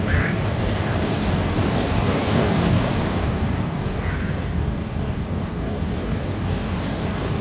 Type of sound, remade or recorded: remade